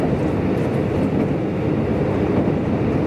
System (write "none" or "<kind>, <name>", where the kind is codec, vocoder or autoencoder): none